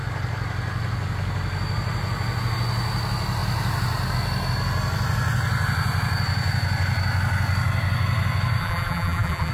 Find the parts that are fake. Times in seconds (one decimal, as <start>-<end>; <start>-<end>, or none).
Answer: 8.6-9.5